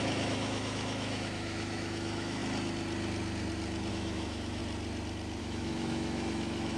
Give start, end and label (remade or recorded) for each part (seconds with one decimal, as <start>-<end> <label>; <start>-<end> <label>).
0.0-2.4 remade; 2.4-3.9 recorded; 3.9-4.6 remade; 4.6-5.4 recorded; 5.4-6.8 remade

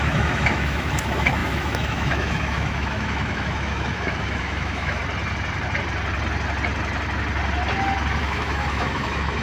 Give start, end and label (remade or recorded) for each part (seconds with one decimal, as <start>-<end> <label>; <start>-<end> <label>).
0.0-5.0 remade; 5.0-8.2 recorded; 8.2-9.4 remade